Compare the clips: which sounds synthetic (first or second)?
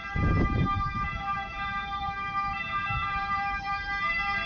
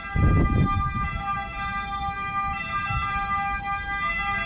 first